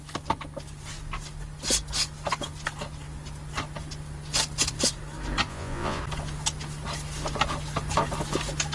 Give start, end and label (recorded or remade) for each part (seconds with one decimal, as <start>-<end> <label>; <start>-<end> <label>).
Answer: 0.0-5.5 recorded; 5.5-6.0 remade; 6.0-8.7 recorded

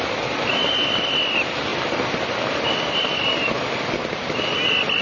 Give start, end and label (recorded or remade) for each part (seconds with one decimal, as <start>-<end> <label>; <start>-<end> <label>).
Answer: 0.0-5.0 recorded

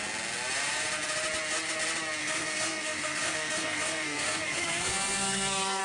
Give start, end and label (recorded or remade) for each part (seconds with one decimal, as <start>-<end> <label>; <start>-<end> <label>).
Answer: 0.0-2.2 recorded; 2.2-5.8 remade